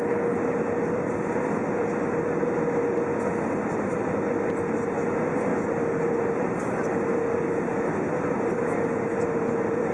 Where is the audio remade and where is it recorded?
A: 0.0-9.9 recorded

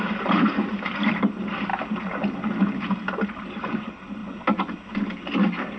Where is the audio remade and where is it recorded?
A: 0.0-1.7 remade; 1.7-3.3 recorded; 3.3-4.2 remade; 4.2-5.8 recorded

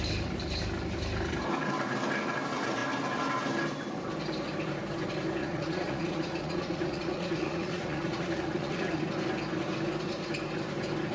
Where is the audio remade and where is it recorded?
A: 0.0-5.4 recorded; 5.4-9.0 remade; 9.0-11.1 recorded